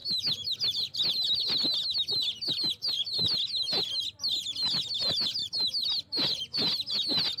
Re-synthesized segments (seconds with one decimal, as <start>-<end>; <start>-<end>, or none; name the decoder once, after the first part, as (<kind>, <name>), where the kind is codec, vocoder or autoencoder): none